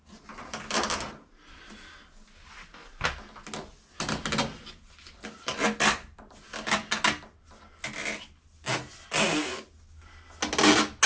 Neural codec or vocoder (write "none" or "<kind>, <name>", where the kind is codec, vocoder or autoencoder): none